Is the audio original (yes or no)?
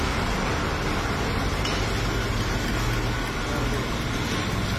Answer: yes